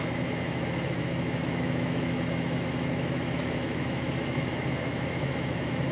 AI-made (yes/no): yes